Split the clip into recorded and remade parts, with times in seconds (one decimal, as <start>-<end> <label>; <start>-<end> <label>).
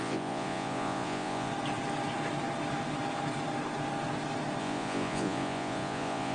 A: 0.0-1.5 remade; 1.5-4.6 recorded; 4.6-6.3 remade